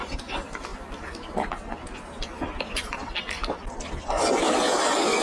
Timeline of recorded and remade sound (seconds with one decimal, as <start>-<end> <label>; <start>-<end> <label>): 0.0-5.2 recorded